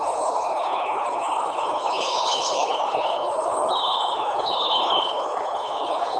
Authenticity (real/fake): fake